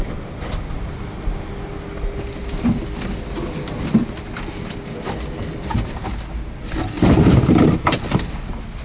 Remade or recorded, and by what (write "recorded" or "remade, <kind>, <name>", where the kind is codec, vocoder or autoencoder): recorded